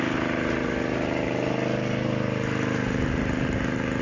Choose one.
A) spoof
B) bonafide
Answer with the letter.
B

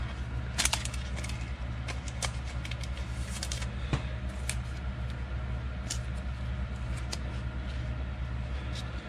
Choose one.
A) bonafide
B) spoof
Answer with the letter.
A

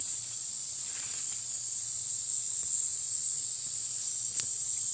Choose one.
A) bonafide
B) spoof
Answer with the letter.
B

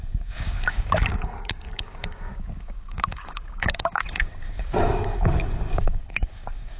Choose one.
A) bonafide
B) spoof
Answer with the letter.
B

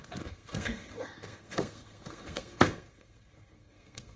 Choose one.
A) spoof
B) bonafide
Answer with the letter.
A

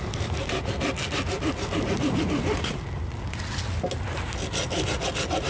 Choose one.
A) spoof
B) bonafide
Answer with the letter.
B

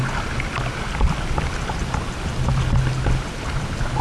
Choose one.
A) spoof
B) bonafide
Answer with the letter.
B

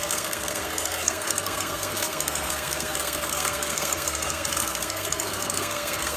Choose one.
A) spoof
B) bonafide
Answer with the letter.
A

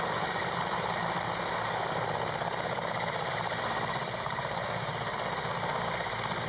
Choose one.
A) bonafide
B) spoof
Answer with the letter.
A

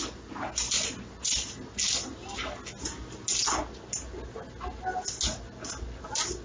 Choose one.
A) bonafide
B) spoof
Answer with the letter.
A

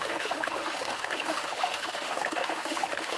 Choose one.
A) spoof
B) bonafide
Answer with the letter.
A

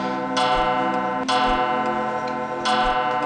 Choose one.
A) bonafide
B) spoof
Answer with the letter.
A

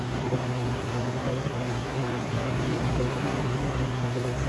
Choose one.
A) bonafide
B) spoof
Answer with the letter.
B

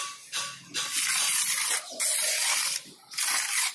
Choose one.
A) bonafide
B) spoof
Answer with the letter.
A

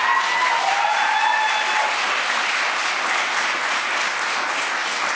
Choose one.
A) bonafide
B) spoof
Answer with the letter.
A